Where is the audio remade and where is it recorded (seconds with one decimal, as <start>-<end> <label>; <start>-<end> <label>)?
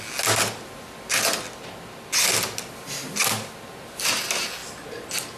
0.0-5.4 recorded